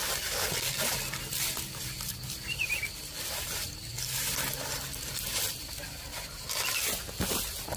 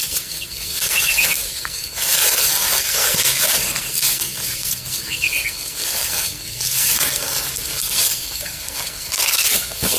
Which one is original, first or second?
first